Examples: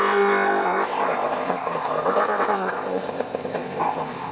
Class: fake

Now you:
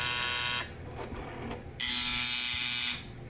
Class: real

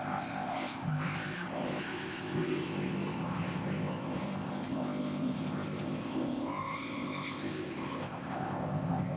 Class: fake